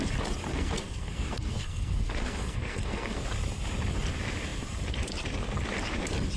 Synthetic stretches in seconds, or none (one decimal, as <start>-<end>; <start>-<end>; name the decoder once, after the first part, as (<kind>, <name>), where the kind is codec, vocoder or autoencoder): 0.5-3.2 (codec, SNAC)